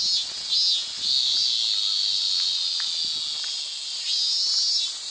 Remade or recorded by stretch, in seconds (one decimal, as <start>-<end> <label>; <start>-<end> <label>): 0.0-5.1 recorded